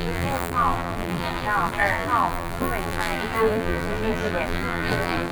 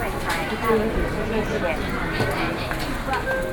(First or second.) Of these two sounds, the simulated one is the first